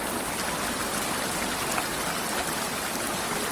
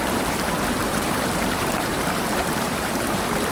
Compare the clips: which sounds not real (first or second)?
second